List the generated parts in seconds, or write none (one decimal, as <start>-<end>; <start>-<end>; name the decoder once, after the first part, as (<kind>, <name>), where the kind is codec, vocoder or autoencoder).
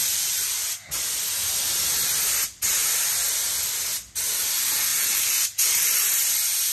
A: 0.0-0.5 (vocoder, BigVGAN v2); 4.9-5.8